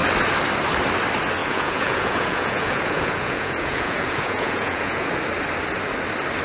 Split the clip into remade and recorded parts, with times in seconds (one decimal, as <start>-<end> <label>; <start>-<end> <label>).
0.0-1.4 recorded; 1.4-5.2 remade; 5.2-6.4 recorded